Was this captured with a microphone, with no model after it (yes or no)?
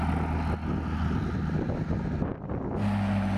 yes